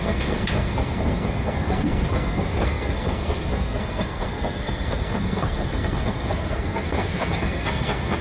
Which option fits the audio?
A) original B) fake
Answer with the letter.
B